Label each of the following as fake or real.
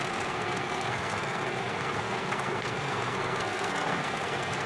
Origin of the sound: fake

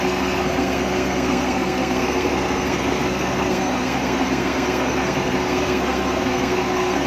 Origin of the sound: fake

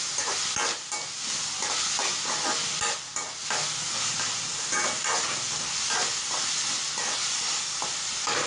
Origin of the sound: real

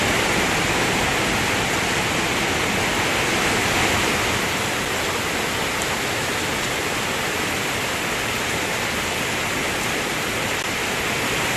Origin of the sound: real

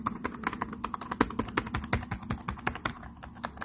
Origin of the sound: real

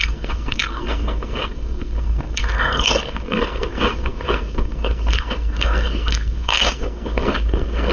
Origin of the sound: fake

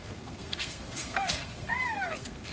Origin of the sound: fake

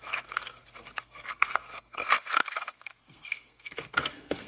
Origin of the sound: fake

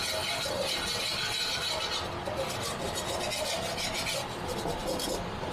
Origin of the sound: real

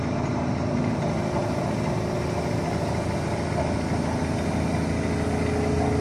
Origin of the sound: real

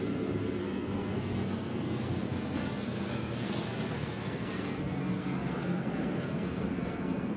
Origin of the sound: fake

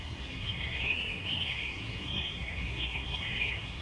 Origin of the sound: fake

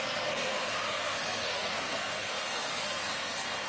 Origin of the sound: fake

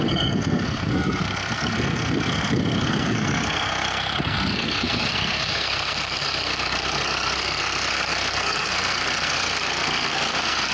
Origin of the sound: fake